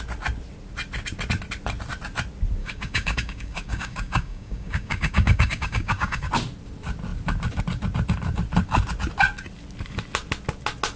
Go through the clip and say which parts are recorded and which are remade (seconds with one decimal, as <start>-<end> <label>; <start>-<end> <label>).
0.0-2.6 recorded; 2.6-6.3 remade; 6.3-11.0 recorded